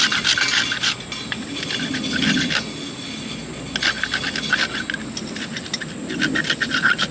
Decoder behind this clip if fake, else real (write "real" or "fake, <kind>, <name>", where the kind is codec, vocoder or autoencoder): real